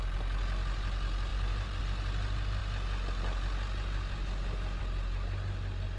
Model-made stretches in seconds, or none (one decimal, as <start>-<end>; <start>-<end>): 1.3-1.8